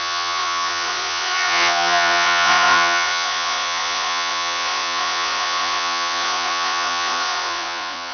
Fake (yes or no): yes